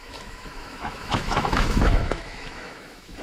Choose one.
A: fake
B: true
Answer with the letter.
A